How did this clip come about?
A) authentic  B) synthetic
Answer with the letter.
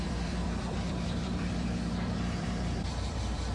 B